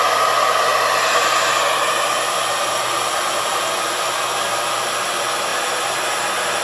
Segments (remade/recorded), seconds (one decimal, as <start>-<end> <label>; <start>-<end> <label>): 0.0-6.6 recorded